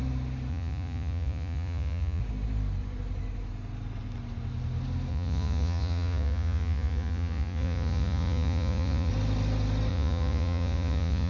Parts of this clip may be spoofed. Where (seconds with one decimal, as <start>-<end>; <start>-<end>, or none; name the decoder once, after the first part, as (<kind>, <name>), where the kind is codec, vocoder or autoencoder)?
0.5-2.2 (vocoder, Vocos); 5.1-9.1; 9.9-11.3